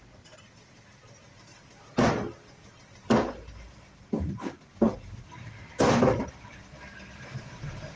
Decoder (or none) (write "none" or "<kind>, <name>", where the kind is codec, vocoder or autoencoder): none